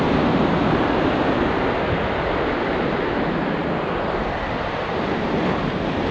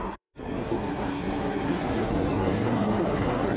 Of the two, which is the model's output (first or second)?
second